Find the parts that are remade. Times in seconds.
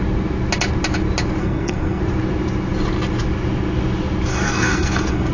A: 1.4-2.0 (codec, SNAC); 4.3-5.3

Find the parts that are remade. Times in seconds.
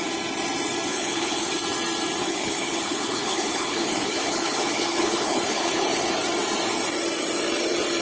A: 0.9-1.5 (codec, HILCodec); 2.2-6.1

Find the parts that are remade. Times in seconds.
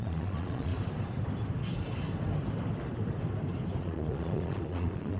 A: 0.0-0.7 (vocoder, Vocos); 3.8-5.2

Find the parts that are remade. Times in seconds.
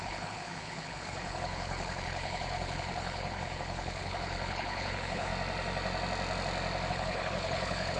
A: 0.0-5.3 (codec, HILCodec); 6.9-8.0